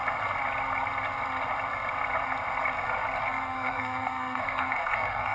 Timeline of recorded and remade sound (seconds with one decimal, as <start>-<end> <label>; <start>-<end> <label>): 0.0-3.2 recorded; 3.2-5.3 remade

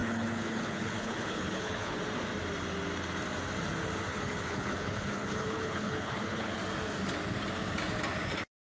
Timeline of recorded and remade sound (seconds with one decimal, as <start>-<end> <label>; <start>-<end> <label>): 0.0-2.0 remade; 2.0-4.1 recorded; 4.1-6.6 remade; 6.6-8.7 recorded